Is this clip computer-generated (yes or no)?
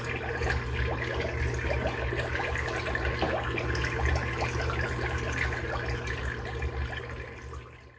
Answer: no